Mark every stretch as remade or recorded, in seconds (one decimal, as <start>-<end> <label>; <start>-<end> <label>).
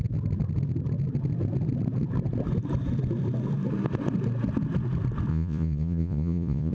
0.0-5.3 recorded; 5.3-6.7 remade